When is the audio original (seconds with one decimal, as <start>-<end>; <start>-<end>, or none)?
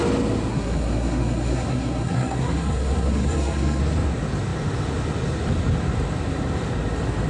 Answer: 0.0-0.5; 3.8-7.3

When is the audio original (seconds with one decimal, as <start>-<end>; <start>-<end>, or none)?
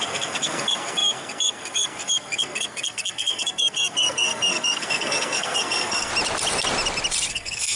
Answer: 6.1-7.3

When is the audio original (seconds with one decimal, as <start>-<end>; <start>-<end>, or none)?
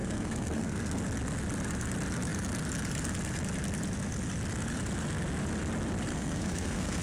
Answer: 1.0-6.1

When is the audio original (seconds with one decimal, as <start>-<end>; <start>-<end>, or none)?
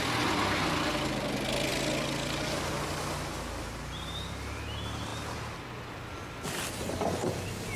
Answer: 0.0-7.8